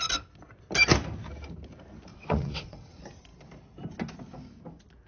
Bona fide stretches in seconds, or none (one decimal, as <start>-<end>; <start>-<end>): 0.0-2.1; 2.9-5.1